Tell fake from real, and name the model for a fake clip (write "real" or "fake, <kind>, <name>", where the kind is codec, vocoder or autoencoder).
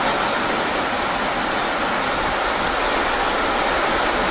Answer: real